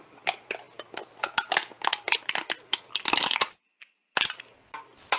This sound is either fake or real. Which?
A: real